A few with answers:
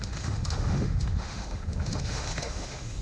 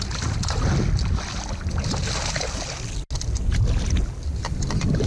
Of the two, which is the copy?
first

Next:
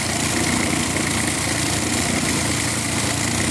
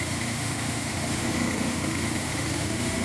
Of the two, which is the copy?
second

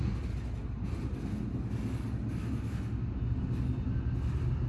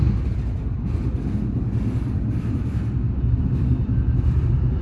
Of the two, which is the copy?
second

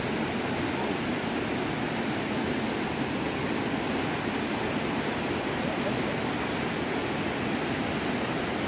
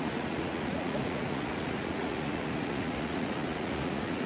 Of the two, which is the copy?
second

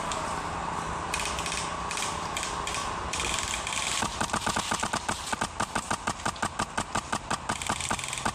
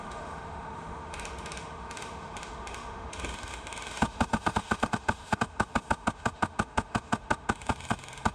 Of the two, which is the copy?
second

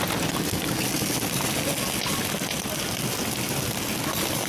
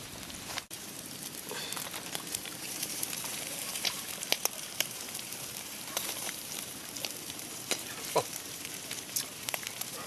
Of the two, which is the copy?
second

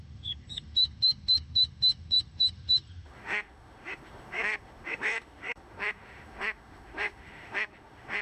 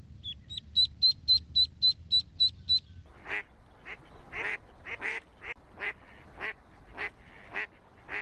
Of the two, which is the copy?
first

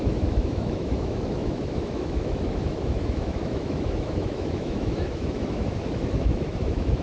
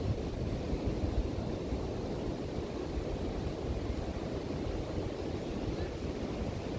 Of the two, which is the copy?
first